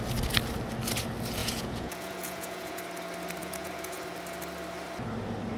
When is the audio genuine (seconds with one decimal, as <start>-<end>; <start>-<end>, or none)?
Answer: 0.0-1.4; 2.8-3.4; 4.0-5.6

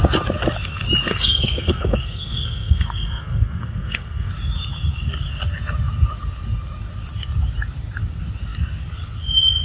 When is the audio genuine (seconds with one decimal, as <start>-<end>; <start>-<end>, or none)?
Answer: 0.0-1.1; 4.3-9.6